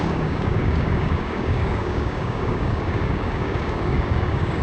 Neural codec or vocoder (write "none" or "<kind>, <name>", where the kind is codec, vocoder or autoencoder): codec, DAC